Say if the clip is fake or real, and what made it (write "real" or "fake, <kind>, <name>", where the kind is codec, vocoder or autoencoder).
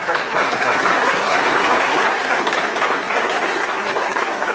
fake, codec, SNAC